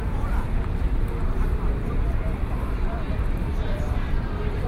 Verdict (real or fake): fake